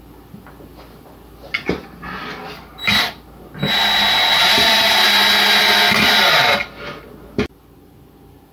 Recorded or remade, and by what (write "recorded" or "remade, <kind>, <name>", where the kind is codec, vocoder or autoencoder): recorded